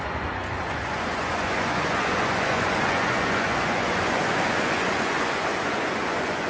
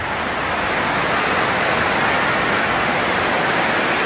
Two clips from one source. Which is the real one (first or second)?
second